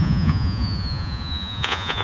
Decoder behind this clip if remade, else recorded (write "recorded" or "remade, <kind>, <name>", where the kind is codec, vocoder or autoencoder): remade, vocoder, Vocos